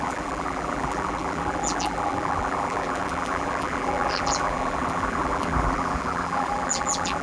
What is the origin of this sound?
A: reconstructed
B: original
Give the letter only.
A